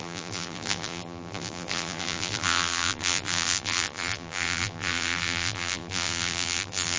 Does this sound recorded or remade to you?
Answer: remade